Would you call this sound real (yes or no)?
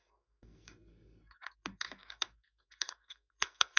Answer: no